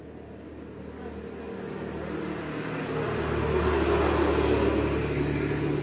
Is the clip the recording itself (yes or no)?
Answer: yes